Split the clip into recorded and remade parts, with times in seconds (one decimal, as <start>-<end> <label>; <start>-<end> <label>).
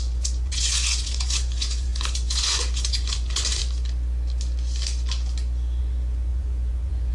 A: 0.0-3.6 remade; 3.6-5.8 recorded; 5.8-7.1 remade